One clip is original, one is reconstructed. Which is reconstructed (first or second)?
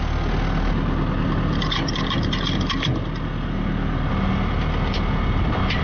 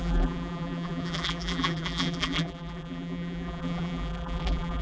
second